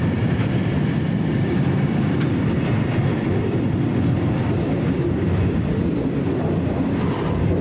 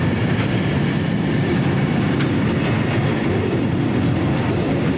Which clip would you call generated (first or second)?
first